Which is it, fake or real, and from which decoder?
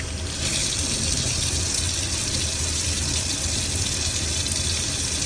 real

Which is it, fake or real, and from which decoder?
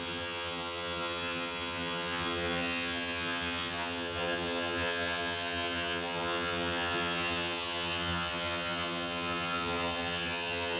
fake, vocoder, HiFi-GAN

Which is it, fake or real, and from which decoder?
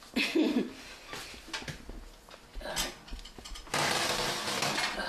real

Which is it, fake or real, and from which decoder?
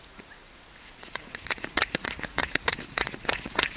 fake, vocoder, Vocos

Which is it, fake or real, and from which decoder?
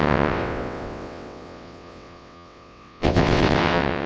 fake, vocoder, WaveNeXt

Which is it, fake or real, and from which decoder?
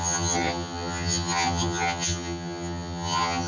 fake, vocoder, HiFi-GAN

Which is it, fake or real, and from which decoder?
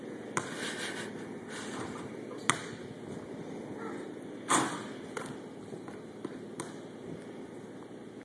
real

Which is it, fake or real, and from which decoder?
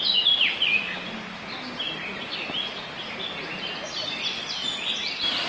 real